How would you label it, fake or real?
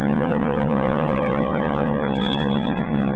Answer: fake